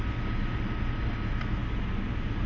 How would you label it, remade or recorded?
recorded